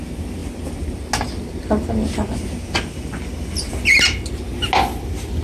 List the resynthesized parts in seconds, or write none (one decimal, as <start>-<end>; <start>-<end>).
none